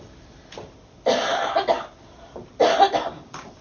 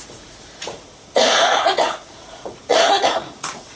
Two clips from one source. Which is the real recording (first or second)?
first